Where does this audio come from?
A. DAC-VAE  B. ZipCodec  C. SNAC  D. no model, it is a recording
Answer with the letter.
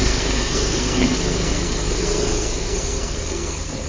C